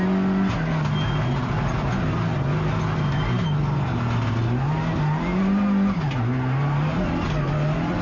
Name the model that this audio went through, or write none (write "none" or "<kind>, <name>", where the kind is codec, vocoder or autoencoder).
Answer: none